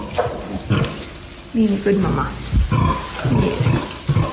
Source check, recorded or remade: recorded